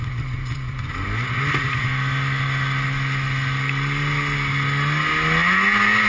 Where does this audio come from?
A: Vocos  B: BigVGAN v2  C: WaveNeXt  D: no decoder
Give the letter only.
D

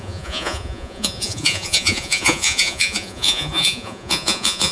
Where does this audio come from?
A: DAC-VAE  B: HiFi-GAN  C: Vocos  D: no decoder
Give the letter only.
C